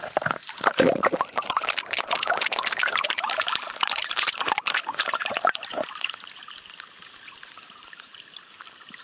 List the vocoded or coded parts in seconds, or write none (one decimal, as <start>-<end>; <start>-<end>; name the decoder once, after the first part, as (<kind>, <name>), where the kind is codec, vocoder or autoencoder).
2.9-8.1 (vocoder, BigVGAN v2)